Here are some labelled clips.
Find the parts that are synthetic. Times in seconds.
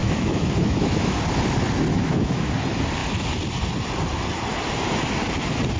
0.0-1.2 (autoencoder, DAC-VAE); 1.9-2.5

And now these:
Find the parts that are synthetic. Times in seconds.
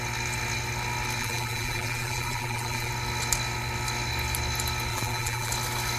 1.2-2.9 (vocoder, BigVGAN v2); 4.9-5.5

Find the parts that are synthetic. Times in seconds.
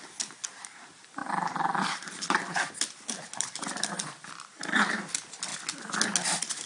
0.0-5.5 (vocoder, BigVGAN v2)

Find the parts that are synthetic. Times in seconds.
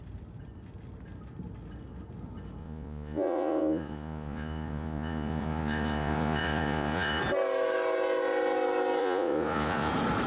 2.6-7.2 (vocoder, Vocos); 9.0-9.9